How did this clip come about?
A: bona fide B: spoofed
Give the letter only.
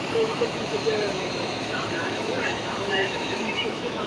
B